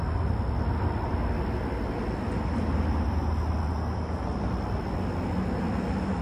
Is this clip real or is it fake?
real